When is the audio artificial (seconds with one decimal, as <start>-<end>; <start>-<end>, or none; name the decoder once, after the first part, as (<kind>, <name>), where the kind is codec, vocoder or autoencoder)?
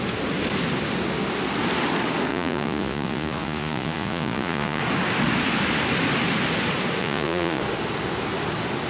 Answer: 2.3-4.8 (vocoder, Vocos); 7.0-7.6